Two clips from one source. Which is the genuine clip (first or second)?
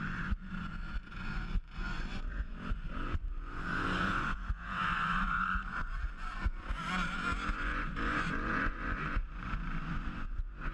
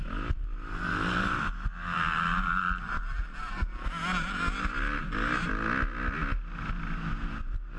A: second